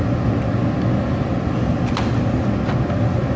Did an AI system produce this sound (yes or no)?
no